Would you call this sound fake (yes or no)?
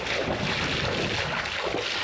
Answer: no